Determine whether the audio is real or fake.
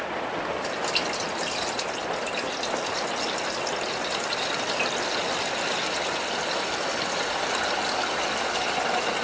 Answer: real